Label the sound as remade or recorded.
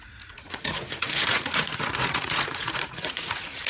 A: remade